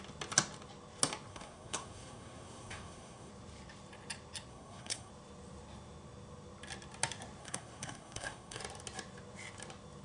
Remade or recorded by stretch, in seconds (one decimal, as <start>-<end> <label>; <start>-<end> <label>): 0.0-1.3 recorded; 1.3-3.3 remade; 3.3-4.5 recorded; 4.5-5.1 remade; 5.1-7.4 recorded; 7.4-8.6 remade; 8.6-10.0 recorded